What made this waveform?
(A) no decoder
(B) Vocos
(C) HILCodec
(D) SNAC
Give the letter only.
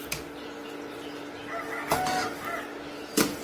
A